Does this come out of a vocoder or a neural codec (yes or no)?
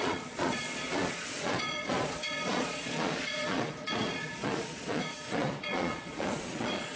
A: yes